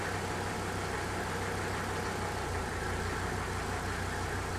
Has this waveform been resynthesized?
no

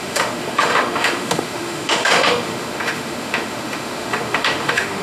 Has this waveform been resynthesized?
yes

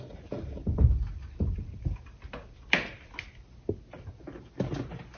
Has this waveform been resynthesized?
no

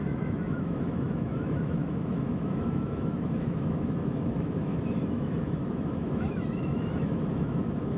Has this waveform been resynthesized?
yes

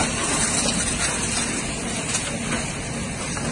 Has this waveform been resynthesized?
no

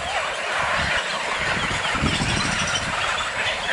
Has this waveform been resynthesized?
no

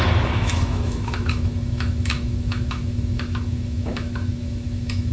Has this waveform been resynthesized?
yes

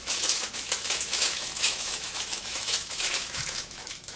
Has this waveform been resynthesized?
yes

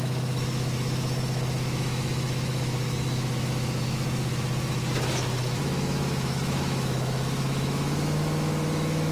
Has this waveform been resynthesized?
yes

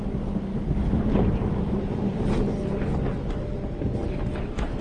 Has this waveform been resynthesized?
no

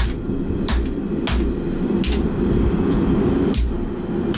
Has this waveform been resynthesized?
no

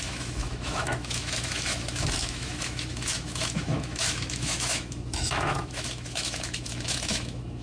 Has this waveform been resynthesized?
yes